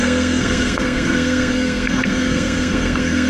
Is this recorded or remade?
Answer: remade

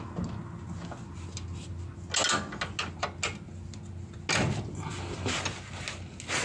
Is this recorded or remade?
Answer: recorded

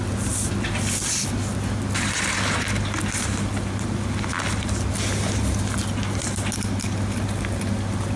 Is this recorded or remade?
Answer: recorded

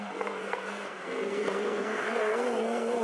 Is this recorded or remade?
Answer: remade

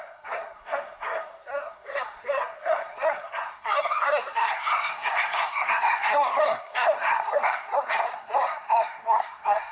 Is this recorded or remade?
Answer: remade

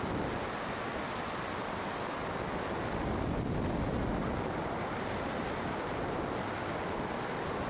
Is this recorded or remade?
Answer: recorded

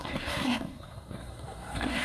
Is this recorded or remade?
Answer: remade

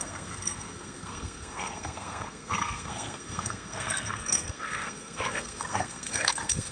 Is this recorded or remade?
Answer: remade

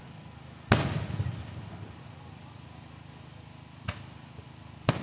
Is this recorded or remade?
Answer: recorded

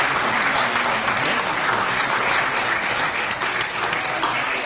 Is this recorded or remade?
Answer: recorded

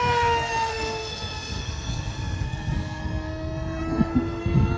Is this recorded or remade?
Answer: remade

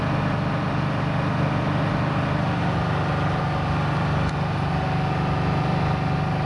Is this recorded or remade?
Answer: recorded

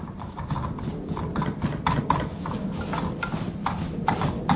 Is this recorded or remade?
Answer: recorded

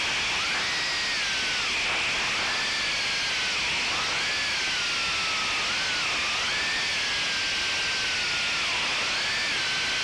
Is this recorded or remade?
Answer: recorded